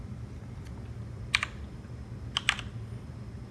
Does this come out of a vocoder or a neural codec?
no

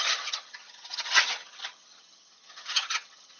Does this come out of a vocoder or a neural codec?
yes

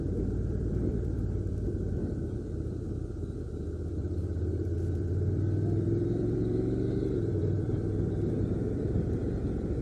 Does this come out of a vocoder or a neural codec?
yes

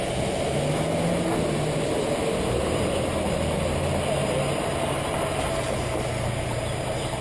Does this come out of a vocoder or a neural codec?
no